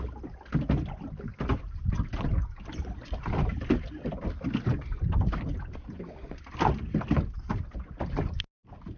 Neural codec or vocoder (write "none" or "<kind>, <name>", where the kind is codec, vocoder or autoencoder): none